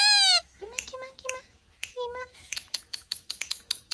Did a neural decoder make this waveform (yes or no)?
yes